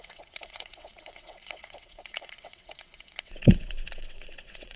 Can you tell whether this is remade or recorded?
remade